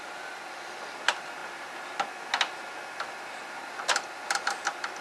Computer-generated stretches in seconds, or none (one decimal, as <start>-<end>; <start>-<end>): none